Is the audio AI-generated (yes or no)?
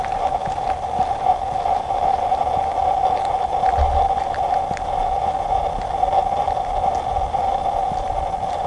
no